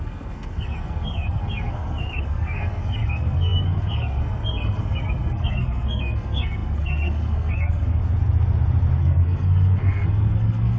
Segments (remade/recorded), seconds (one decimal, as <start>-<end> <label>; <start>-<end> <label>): 0.0-8.0 remade; 8.0-9.0 recorded; 9.0-10.8 remade